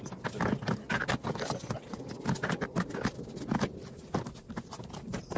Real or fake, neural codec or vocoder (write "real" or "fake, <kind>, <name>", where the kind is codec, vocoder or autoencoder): real